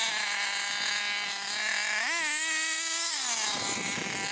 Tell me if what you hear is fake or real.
real